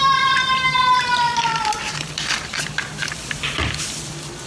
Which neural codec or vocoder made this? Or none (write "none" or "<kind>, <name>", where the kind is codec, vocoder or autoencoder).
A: vocoder, BigVGAN v2